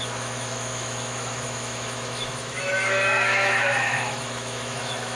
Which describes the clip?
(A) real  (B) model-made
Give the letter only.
B